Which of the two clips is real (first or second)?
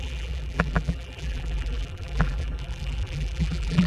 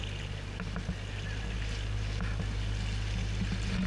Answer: second